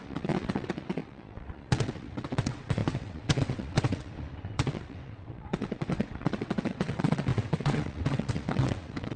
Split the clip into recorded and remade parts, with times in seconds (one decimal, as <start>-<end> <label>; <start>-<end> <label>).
0.0-9.2 remade